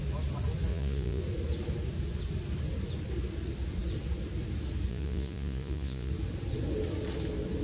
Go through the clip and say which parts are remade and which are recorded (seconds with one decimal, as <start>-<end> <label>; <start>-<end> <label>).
0.0-0.7 recorded; 0.7-1.2 remade; 1.2-4.9 recorded; 4.9-6.1 remade; 6.1-7.6 recorded